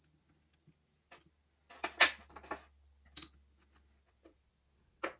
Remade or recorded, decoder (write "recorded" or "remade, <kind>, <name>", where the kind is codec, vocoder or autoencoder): recorded